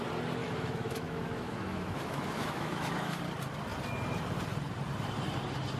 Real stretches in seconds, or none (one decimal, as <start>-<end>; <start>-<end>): 0.0-0.4; 3.2-5.8